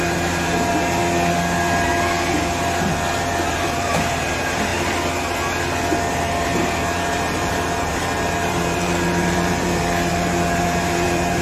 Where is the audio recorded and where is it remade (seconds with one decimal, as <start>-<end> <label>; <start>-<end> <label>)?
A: 0.0-1.0 remade; 1.0-3.5 recorded; 3.5-4.7 remade; 4.7-6.1 recorded; 6.1-11.4 remade